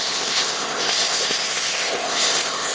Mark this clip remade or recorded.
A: remade